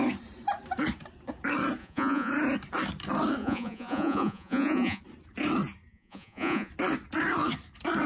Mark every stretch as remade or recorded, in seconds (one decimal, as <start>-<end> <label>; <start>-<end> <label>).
0.0-1.8 recorded; 1.8-2.3 remade; 2.3-3.4 recorded; 3.4-5.0 remade; 5.0-5.9 recorded; 5.9-6.7 remade; 6.7-8.1 recorded

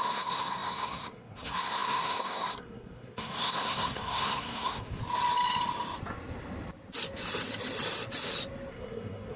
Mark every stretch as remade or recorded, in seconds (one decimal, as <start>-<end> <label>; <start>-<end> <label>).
0.0-5.0 remade; 5.0-8.7 recorded; 8.7-9.4 remade